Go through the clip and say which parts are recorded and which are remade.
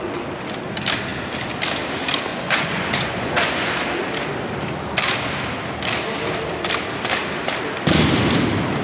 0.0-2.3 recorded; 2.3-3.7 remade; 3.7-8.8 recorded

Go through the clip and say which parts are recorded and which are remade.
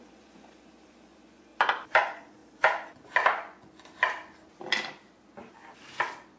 0.0-1.5 remade; 1.5-2.0 recorded; 2.0-2.4 remade; 2.4-3.3 recorded; 3.3-3.7 remade; 3.7-6.4 recorded